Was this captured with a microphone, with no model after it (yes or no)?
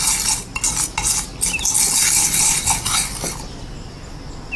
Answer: yes